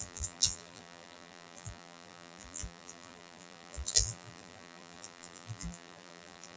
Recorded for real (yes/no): no